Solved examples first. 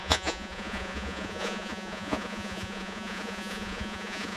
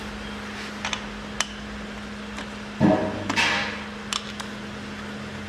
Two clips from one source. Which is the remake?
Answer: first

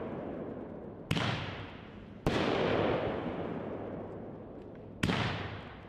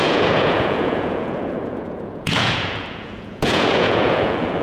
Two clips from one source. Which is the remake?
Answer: second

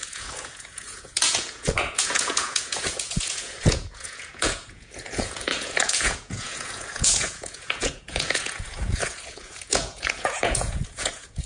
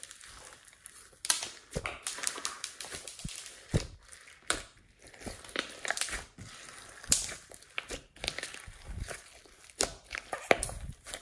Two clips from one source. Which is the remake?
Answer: first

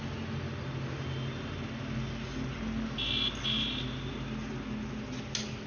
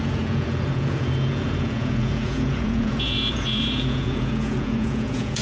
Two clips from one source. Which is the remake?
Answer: second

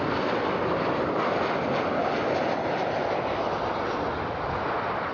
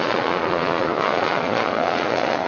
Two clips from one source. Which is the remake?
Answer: second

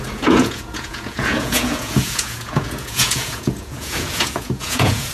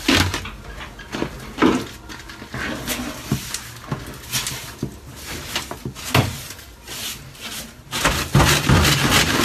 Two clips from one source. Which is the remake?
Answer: first